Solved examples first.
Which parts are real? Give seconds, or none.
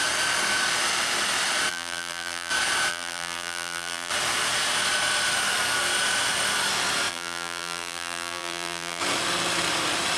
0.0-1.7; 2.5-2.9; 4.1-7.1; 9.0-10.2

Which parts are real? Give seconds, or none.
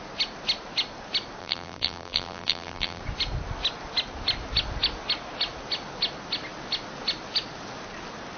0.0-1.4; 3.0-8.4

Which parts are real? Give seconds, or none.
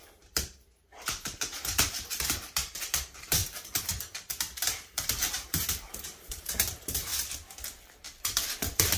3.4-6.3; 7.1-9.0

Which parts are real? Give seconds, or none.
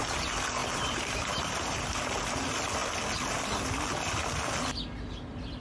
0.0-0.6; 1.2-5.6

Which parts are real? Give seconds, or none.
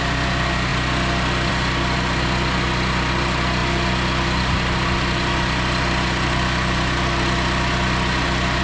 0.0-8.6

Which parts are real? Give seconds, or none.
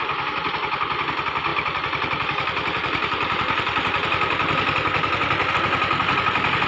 0.0-1.5; 5.5-6.7